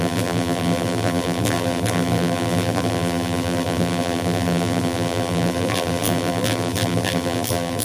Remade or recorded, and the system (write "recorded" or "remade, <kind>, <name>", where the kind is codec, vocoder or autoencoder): remade, vocoder, BigVGAN v2